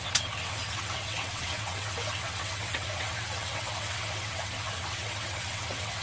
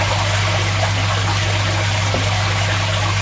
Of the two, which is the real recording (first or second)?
second